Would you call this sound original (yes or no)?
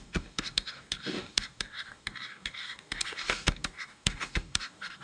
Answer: no